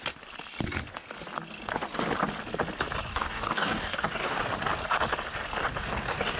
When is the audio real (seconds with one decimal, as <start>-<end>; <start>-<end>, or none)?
0.0-3.1; 4.4-5.7